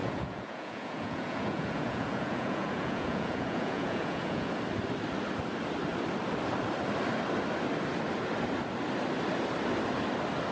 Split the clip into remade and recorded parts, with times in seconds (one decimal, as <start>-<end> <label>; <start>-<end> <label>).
0.0-4.6 remade; 4.6-10.5 recorded